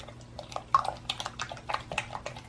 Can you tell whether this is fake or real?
real